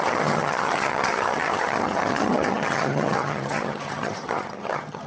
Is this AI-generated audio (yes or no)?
yes